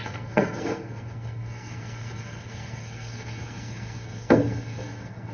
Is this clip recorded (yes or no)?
no